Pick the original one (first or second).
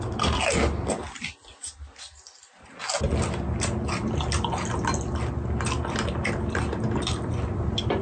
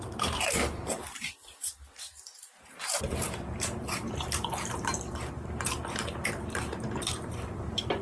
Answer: first